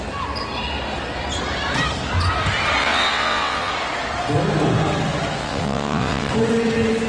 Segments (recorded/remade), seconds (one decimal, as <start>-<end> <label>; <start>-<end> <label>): 0.0-2.8 recorded; 2.8-3.7 remade; 3.7-5.4 recorded; 5.4-6.3 remade; 6.3-7.1 recorded